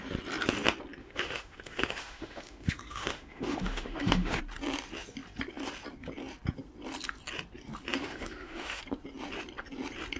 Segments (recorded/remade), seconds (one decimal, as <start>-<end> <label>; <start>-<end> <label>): 0.0-1.0 recorded; 1.0-4.4 remade; 4.4-8.0 recorded; 8.0-8.8 remade; 8.8-10.2 recorded